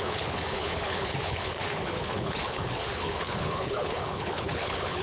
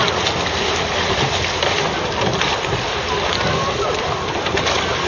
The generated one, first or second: first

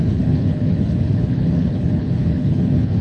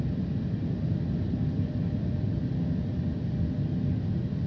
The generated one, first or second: first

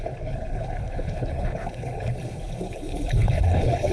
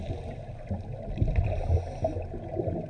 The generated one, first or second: first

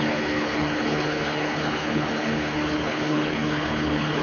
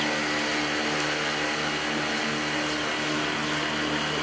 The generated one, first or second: first